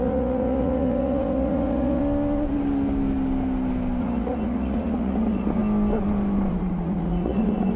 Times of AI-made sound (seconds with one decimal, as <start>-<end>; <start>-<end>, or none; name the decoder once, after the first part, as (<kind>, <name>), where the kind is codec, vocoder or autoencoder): 0.0-2.0 (vocoder, Vocos); 4.0-5.6; 6.5-7.8